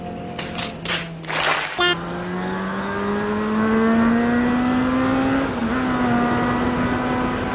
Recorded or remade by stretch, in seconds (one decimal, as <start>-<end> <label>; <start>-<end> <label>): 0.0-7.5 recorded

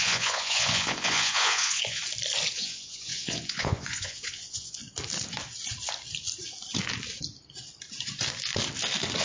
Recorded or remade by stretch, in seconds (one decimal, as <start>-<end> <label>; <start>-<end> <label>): 0.0-2.0 remade; 2.0-2.5 recorded; 2.5-4.8 remade; 4.8-9.2 recorded

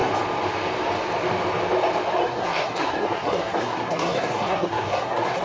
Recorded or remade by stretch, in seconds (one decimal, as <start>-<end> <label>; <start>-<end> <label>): 0.0-2.2 recorded; 2.2-5.4 remade

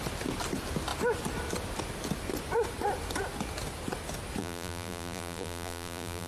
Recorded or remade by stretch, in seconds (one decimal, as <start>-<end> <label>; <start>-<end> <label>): 0.0-4.4 recorded; 4.4-6.3 remade

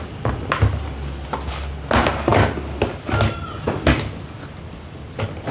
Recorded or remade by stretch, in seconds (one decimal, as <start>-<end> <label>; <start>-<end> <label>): 0.0-5.5 recorded

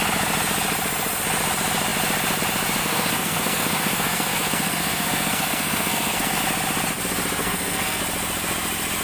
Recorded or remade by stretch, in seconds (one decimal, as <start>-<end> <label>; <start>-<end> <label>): 0.0-2.8 recorded; 2.8-6.4 remade; 6.4-7.4 recorded; 7.4-8.0 remade; 8.0-9.0 recorded